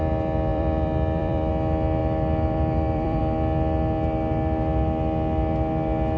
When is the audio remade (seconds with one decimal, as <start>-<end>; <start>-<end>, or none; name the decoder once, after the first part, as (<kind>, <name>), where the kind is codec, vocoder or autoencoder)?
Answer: 0.5-1.5 (vocoder, BigVGAN v2); 2.0-3.2